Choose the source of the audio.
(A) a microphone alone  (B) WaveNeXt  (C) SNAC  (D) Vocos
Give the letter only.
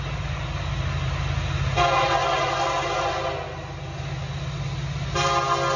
A